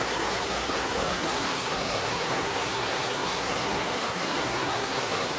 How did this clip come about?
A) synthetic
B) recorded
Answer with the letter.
A